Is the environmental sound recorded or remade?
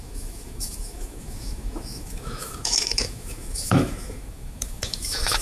remade